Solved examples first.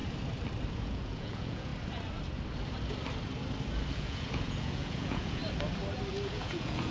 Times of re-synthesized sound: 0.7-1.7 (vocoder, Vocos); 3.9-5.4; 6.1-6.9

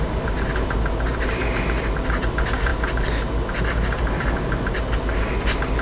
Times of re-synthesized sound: none